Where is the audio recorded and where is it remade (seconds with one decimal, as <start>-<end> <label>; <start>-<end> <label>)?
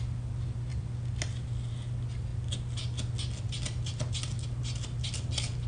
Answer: 0.0-5.7 recorded